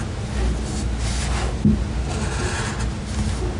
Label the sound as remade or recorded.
recorded